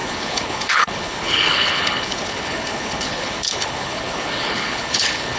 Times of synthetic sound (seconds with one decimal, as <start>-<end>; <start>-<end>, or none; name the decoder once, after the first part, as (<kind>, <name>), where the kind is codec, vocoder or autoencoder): 0.0-5.4 (codec, HILCodec)